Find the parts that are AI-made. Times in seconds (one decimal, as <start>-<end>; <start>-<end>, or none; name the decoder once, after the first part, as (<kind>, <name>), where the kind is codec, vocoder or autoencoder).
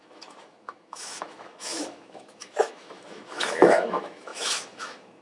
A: 0.0-5.2 (autoencoder, DAC-VAE)